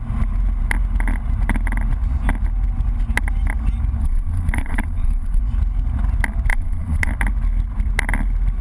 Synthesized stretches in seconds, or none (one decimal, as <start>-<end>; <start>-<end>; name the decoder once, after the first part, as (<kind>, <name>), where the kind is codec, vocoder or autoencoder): 4.0-5.4 (vocoder, Vocos); 6.5-7.1